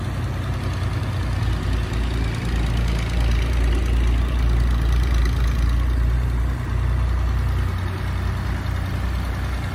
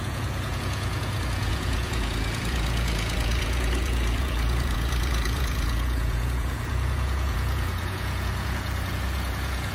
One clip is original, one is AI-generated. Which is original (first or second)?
first